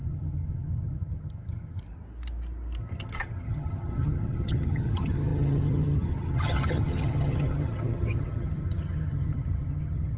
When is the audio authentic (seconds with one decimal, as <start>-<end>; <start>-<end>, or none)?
1.8-2.8